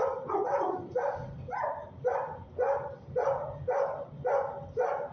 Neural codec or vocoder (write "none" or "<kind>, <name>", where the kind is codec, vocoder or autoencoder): none